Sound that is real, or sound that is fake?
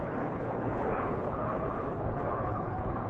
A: fake